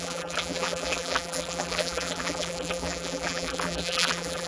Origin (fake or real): fake